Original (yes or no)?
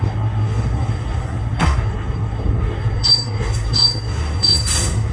no